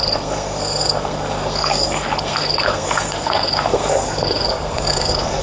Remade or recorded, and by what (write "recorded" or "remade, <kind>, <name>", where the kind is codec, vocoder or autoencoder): remade, codec, SNAC